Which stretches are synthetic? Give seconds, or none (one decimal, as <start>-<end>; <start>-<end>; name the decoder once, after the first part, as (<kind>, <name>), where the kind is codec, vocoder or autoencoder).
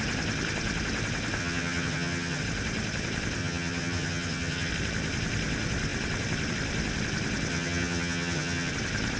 1.4-2.4 (vocoder, HiFi-GAN); 3.4-4.7; 7.5-8.7